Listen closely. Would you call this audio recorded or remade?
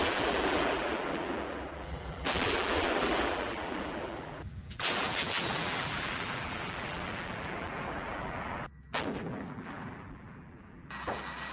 remade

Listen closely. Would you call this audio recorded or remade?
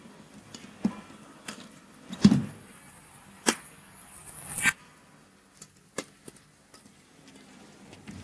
recorded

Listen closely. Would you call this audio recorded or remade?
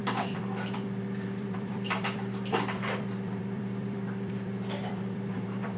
remade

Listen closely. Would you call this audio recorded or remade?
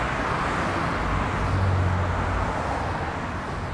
recorded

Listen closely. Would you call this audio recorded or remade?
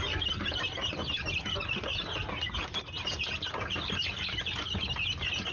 recorded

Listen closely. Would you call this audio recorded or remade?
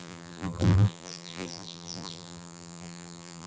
remade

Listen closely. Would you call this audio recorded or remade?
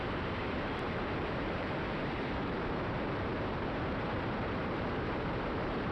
remade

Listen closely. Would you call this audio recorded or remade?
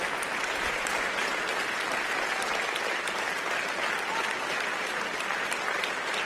recorded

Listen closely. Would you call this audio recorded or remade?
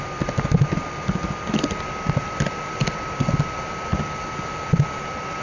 recorded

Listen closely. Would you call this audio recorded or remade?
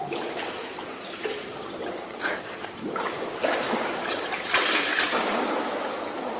remade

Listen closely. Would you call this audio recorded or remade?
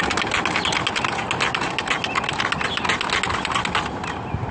recorded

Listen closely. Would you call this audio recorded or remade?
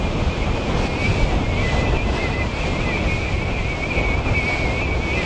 recorded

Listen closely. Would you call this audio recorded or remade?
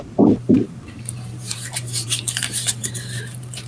remade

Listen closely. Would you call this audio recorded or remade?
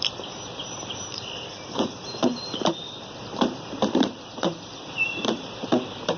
remade